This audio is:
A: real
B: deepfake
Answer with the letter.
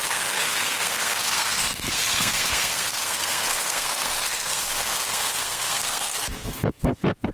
B